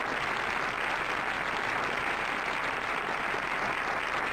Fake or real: real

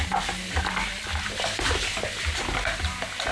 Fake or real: real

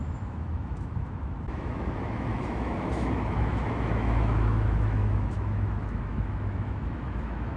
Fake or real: fake